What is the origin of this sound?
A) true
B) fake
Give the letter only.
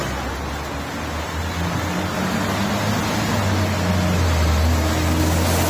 A